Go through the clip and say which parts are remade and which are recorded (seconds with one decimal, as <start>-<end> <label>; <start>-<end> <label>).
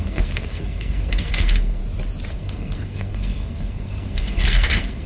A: 0.0-1.8 remade; 1.8-2.3 recorded; 2.3-5.1 remade